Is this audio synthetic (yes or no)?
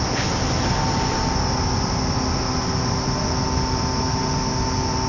no